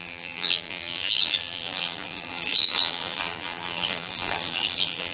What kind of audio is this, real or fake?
fake